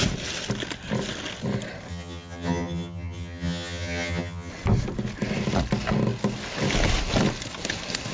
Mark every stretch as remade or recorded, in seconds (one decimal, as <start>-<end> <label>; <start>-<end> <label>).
0.0-1.9 recorded; 1.9-4.5 remade; 4.5-8.1 recorded